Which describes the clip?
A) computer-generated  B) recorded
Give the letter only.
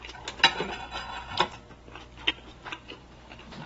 B